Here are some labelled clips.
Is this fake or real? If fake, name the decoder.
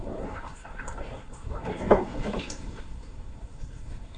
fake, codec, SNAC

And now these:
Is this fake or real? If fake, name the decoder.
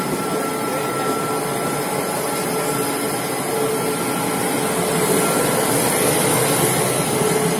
real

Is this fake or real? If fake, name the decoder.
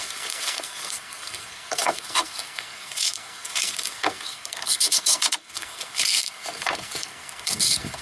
fake, codec, SNAC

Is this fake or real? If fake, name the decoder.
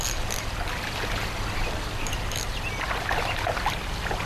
real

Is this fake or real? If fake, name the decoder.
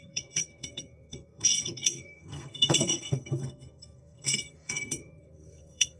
fake, codec, SNAC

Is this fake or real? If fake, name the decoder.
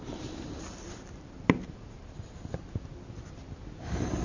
real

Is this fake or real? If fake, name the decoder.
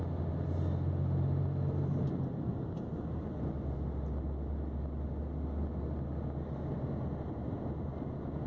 real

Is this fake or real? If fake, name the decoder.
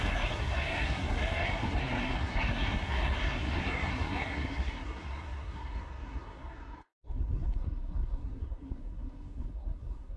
fake, codec, SNAC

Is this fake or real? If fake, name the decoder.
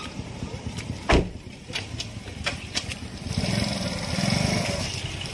real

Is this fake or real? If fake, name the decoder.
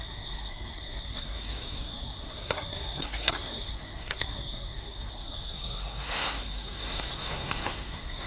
fake, codec, SNAC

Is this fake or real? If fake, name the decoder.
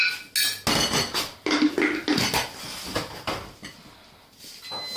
real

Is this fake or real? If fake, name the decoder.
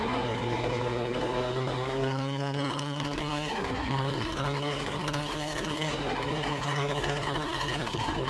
fake, codec, SNAC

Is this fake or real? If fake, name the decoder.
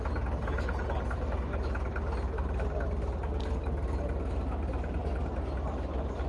real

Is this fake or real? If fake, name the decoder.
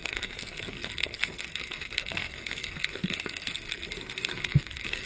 fake, codec, SNAC